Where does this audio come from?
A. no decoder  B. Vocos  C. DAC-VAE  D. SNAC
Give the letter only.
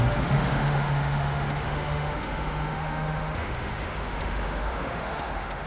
C